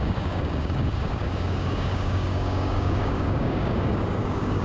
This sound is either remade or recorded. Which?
remade